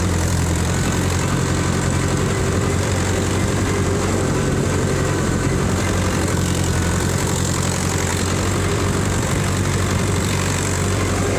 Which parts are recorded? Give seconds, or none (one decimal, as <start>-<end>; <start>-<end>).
8.1-8.7